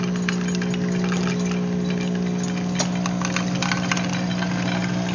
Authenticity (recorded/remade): recorded